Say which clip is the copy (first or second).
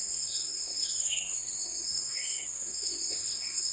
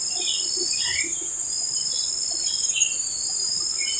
first